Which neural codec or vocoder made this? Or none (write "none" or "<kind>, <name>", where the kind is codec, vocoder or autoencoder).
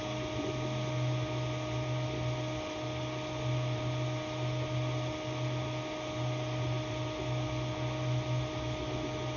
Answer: none